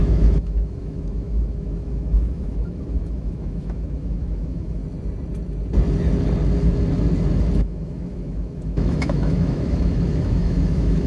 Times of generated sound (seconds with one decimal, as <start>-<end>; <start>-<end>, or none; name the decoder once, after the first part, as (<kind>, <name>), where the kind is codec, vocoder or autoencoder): 0.0-4.8 (autoencoder, DAC-VAE); 7.6-11.1